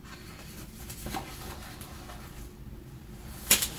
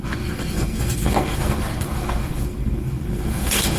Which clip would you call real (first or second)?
first